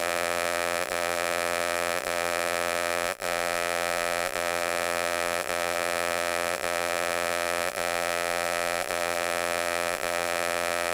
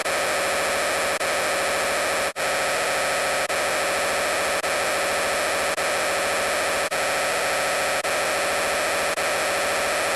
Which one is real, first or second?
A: second